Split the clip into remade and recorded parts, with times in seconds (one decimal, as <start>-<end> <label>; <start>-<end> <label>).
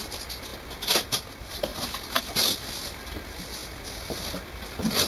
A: 0.0-5.1 recorded